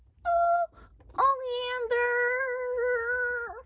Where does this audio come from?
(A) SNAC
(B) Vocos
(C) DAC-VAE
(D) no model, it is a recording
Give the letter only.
D